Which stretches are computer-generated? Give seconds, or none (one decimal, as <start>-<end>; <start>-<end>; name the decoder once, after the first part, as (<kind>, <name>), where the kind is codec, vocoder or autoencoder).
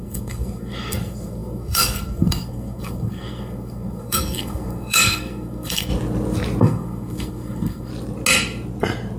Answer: 0.0-5.9 (codec, SNAC); 6.6-7.9